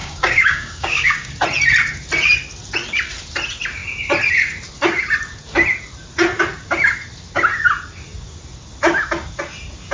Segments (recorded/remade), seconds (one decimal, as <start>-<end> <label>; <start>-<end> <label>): 0.0-1.3 remade; 1.3-9.9 recorded